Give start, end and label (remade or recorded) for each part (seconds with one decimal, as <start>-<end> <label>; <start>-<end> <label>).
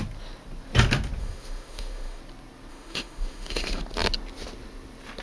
0.0-1.2 recorded; 1.2-2.2 remade; 2.2-2.7 recorded; 2.7-3.8 remade; 3.8-5.2 recorded